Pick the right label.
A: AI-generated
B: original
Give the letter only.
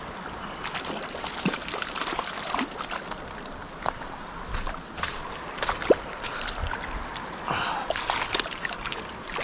B